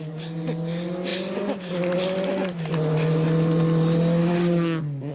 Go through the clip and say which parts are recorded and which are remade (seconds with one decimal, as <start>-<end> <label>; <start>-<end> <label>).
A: 0.0-4.2 recorded; 4.2-5.1 remade